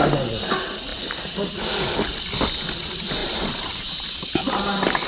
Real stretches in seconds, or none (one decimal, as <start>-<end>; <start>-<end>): 0.0-3.2; 3.9-5.1